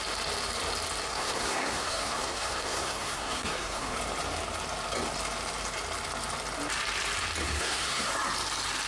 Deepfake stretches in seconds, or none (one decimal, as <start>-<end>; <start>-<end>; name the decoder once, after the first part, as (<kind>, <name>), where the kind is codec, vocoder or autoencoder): 1.1-4.0 (codec, SNAC); 7.4-8.1